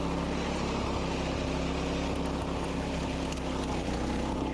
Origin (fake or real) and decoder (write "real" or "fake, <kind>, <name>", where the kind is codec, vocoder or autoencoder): real